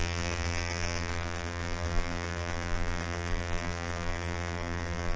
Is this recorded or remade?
remade